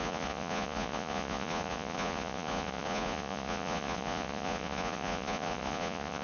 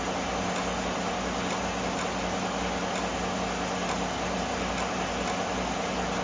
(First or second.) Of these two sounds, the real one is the second